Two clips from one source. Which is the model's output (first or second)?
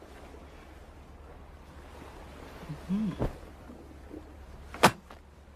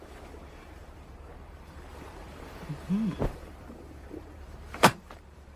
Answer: second